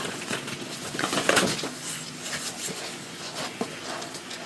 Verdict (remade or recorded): remade